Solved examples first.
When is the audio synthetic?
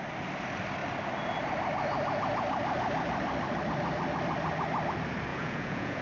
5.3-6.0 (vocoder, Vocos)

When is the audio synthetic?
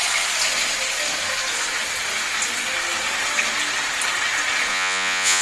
4.7-5.4 (vocoder, Vocos)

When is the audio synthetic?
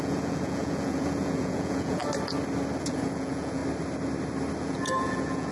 0.0-2.0 (vocoder, Vocos); 2.8-3.6; 4.6-5.5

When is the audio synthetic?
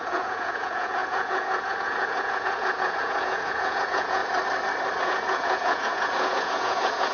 0.0-4.2 (vocoder, Vocos); 5.0-7.1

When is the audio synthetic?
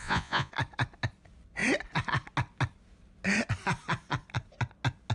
0.0-0.5 (vocoder, Vocos)